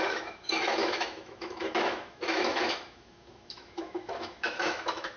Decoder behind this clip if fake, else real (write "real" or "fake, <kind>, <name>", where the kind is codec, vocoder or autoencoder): fake, autoencoder, DAC-VAE